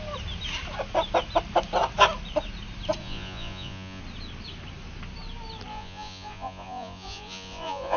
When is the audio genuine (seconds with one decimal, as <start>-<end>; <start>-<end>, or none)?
0.0-3.0; 4.0-5.7